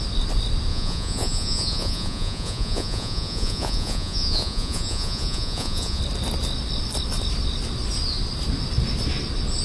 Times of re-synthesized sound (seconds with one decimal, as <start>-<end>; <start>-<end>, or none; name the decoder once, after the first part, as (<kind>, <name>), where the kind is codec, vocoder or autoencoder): 0.7-6.0 (vocoder, Vocos)